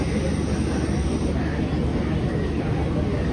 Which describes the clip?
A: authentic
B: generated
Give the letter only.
A